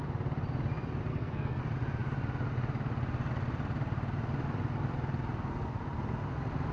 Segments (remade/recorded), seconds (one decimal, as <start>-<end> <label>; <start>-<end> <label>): 0.0-1.1 recorded; 1.1-1.6 remade; 1.6-6.7 recorded